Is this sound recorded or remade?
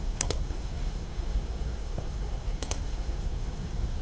remade